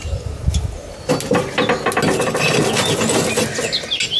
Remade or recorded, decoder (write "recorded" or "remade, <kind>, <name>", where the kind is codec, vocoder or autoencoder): recorded